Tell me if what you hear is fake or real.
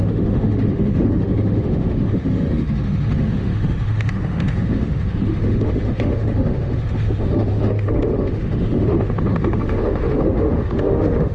fake